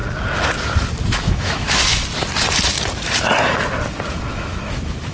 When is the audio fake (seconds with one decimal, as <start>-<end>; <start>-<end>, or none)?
1.1-2.0; 4.1-5.1